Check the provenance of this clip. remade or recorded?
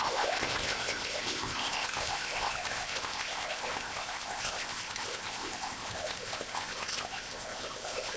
remade